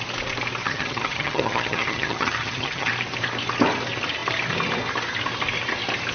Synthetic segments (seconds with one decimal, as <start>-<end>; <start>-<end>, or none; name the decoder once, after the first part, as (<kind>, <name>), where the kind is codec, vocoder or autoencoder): 0.6-2.9 (vocoder, HiFi-GAN)